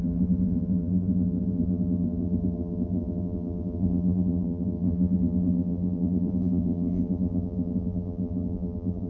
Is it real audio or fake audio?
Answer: fake